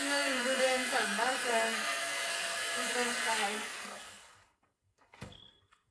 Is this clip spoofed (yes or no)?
yes